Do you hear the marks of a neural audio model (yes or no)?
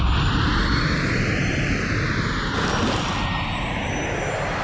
no